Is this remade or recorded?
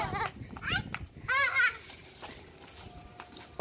recorded